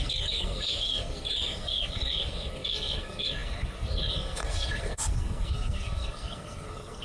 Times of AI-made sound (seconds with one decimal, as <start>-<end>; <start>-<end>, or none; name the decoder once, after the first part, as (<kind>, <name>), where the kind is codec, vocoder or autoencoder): 0.0-7.0 (codec, SNAC)